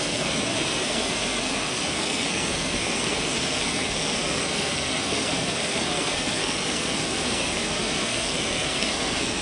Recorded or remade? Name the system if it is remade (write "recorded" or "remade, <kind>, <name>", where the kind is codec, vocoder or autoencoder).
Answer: remade, codec, SNAC